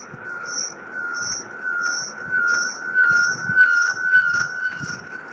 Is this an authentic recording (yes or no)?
yes